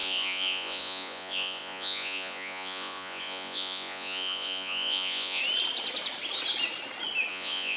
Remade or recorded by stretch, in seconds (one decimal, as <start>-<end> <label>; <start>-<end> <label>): 0.0-5.4 remade; 5.4-7.3 recorded; 7.3-7.8 remade